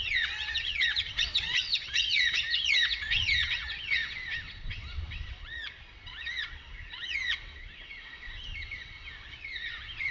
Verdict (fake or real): fake